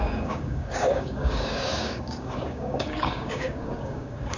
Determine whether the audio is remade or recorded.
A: remade